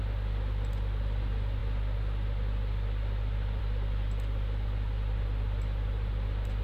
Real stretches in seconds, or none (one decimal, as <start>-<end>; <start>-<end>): 0.0-6.6